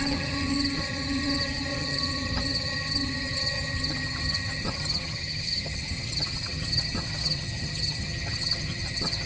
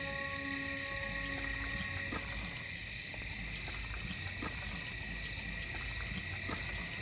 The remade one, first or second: first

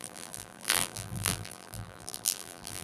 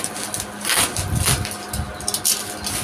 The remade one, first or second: first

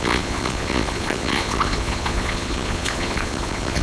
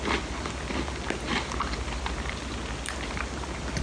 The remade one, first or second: first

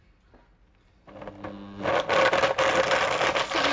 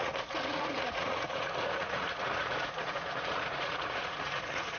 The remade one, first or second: second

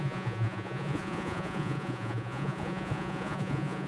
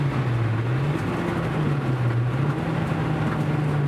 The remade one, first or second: first